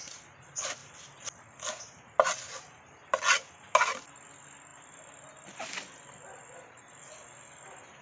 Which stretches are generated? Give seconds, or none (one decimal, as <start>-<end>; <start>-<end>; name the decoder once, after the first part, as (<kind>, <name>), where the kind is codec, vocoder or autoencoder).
none